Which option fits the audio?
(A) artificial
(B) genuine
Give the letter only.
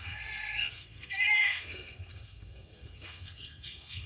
A